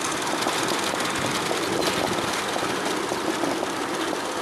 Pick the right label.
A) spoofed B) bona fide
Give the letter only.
B